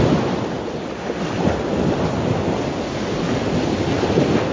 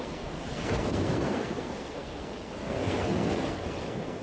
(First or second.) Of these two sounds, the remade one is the second